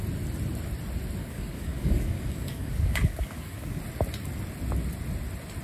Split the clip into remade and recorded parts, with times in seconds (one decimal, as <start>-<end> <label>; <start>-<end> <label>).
0.0-1.2 recorded; 1.2-3.8 remade; 3.8-5.6 recorded